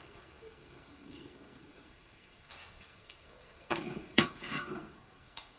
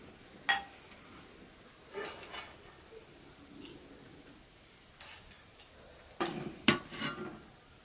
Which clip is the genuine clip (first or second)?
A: second